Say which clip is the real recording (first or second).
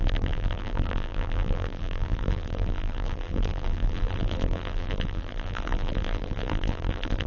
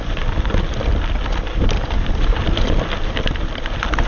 second